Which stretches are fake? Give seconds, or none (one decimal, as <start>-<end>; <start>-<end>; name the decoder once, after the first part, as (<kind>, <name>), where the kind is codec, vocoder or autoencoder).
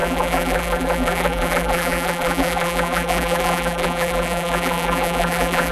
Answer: 0.0-5.7 (vocoder, BigVGAN v2)